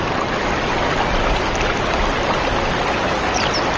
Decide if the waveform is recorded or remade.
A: recorded